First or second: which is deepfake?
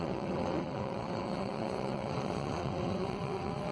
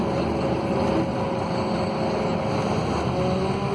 first